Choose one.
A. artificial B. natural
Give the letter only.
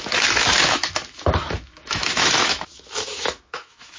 A